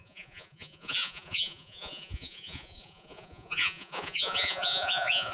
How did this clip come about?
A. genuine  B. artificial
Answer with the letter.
B